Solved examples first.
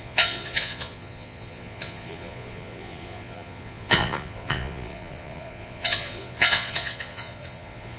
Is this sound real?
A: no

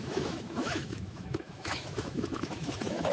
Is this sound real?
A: no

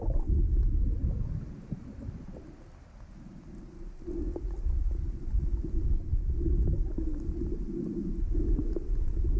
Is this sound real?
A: yes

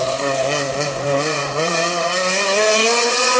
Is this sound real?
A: no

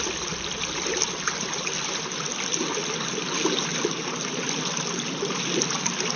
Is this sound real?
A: yes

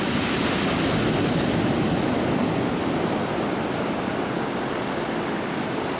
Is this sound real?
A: yes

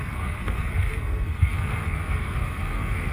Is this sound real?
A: no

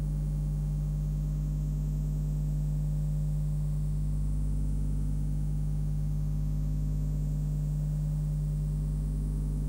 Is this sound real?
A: no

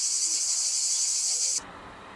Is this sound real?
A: yes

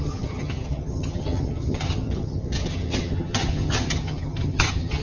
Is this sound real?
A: no